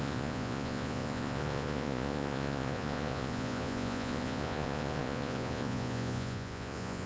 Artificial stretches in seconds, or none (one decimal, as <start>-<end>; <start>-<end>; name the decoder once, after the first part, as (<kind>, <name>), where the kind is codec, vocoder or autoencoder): 0.0-7.1 (vocoder, Vocos)